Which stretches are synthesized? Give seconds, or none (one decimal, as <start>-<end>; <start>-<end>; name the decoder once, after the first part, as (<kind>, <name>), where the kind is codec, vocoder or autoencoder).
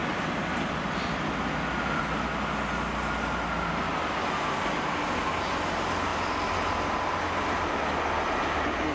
none